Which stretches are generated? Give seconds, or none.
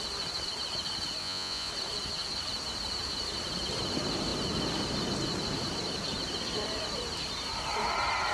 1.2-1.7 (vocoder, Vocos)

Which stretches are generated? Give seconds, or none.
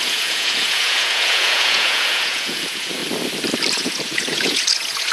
0.0-3.0 (vocoder, Vocos); 3.7-5.1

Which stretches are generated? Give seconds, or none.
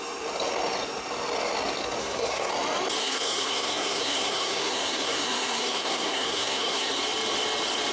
2.0-2.5 (codec, SNAC); 3.0-7.0